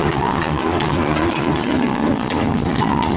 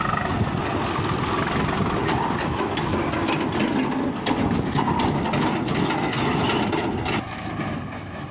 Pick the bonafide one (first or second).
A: second